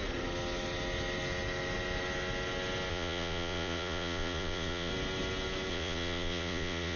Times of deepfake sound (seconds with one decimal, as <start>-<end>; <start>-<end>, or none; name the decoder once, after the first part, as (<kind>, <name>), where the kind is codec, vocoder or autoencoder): 2.9-4.9 (vocoder, Vocos); 5.7-7.0